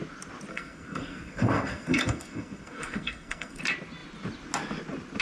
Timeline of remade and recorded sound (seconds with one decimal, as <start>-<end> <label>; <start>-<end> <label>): 0.0-0.5 recorded; 0.5-3.6 remade; 3.6-5.2 recorded